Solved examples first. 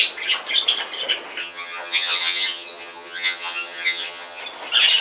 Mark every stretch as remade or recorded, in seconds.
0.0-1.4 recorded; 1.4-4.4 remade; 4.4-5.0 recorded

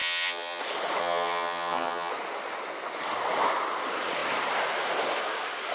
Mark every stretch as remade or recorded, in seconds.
0.0-0.6 remade; 0.6-1.0 recorded; 1.0-2.1 remade; 2.1-5.7 recorded

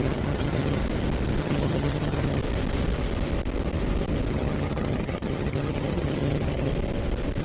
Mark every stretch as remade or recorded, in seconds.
0.0-0.8 remade; 0.8-1.4 recorded; 1.4-2.4 remade; 2.4-4.3 recorded; 4.3-6.7 remade; 6.7-7.4 recorded